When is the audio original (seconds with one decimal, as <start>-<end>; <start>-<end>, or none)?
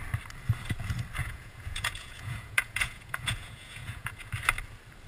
0.0-1.2; 4.3-5.1